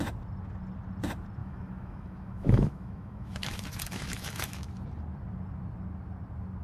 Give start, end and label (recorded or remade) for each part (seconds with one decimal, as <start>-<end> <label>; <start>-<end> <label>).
0.0-1.4 recorded; 1.4-4.7 remade; 4.7-6.6 recorded